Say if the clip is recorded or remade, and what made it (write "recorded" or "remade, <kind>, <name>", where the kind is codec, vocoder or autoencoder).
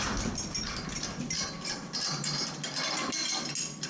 recorded